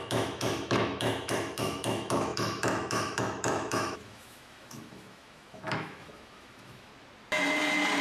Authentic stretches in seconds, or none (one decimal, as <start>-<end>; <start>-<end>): 6.9-8.0